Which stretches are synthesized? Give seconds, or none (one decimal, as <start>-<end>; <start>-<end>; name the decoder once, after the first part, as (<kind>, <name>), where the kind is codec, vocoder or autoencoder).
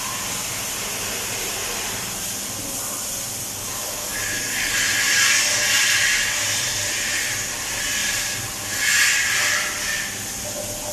3.6-4.7 (codec, DAC)